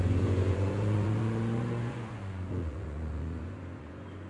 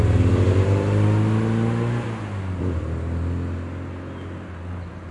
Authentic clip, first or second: second